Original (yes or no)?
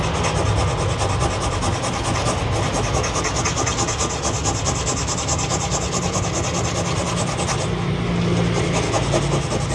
yes